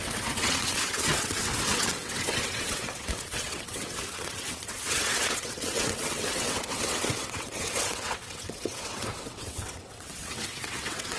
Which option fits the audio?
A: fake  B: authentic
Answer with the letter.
A